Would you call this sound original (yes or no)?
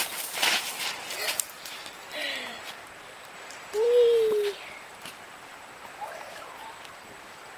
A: no